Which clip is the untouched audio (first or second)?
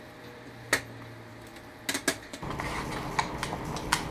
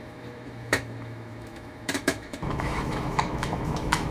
first